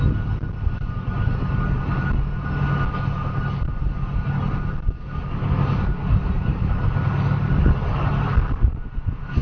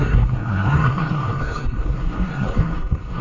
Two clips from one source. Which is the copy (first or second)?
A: second